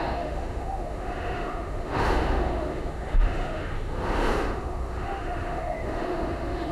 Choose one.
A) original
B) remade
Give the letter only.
B